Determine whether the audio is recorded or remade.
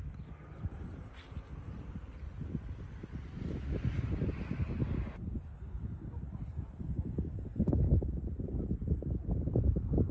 recorded